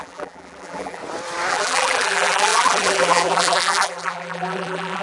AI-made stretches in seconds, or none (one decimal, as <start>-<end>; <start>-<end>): 0.0-1.0; 1.5-5.0